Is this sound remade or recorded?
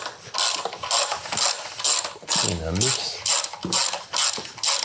recorded